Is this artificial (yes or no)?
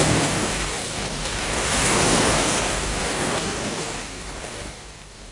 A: yes